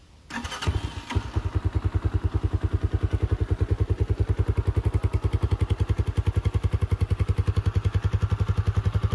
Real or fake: real